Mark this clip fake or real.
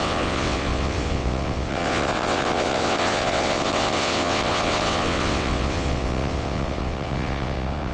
fake